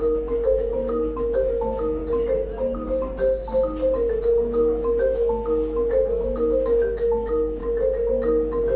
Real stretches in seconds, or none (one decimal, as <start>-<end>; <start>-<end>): 2.0-4.1; 7.6-8.8